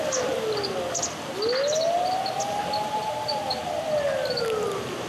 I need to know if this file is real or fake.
real